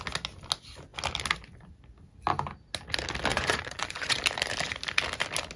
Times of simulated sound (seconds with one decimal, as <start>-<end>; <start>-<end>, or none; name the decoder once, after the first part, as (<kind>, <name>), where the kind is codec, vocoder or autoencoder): 3.3-4.2 (vocoder, Vocos)